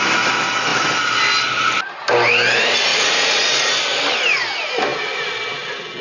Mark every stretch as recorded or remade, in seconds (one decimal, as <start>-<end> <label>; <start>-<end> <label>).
0.0-2.9 recorded; 2.9-3.7 remade; 3.7-6.0 recorded